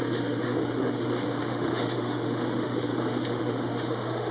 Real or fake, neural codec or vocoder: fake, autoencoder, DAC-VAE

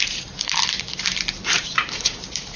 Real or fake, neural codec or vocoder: fake, vocoder, BigVGAN v2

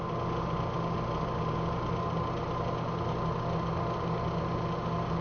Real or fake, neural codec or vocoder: real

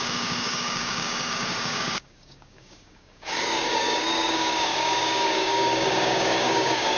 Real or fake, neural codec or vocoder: fake, codec, DAC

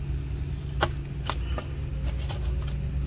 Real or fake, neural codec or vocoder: real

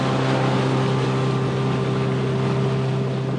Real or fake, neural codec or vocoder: real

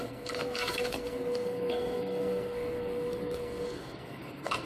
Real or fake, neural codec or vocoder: fake, codec, SNAC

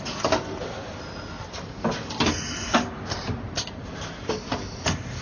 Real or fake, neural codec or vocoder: real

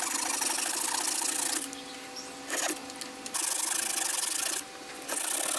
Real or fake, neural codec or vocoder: real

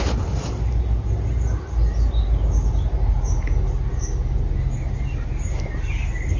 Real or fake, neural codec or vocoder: real